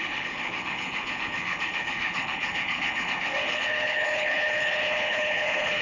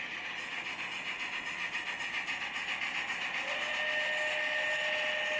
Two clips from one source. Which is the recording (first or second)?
second